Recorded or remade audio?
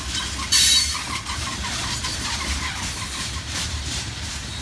remade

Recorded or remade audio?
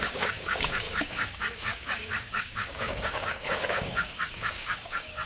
remade